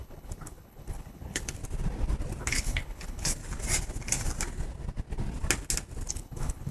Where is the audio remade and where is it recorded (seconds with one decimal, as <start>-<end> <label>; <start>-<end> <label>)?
0.0-1.6 remade; 1.6-2.4 recorded; 2.4-3.4 remade; 3.4-6.1 recorded; 6.1-6.7 remade